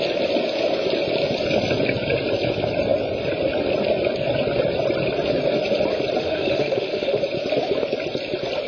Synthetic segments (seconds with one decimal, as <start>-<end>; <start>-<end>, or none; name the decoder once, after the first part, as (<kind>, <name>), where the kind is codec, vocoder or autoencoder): 6.2-7.2 (autoencoder, DAC-VAE)